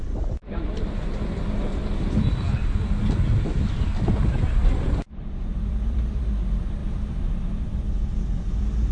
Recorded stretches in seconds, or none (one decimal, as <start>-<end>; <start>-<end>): 0.0-4.6; 6.2-6.8